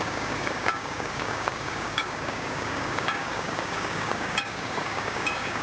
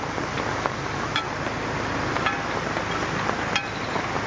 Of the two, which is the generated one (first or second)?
first